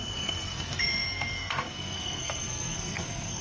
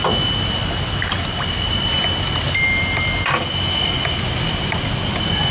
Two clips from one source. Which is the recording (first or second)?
second